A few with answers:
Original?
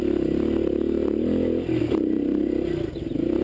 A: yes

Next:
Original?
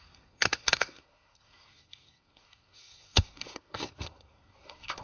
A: no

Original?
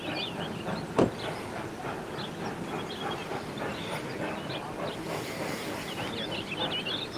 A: yes